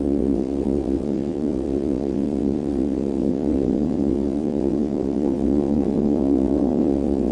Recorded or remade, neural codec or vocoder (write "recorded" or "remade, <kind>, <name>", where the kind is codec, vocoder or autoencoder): remade, vocoder, WaveNeXt